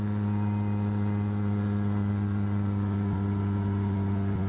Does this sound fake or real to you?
real